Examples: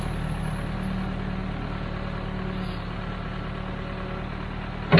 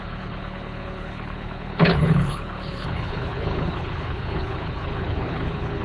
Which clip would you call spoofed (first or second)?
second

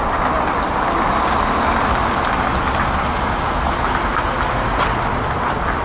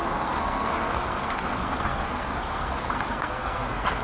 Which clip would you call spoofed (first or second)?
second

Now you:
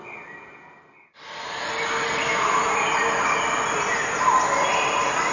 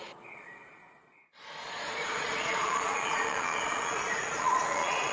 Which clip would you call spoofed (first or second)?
second